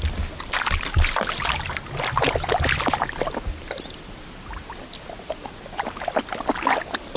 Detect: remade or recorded recorded